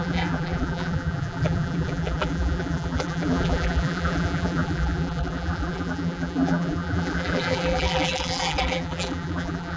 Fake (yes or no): yes